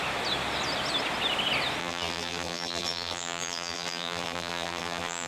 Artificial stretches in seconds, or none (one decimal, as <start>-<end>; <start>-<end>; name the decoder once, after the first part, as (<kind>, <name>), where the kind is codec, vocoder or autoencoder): 1.8-5.3 (vocoder, BigVGAN v2)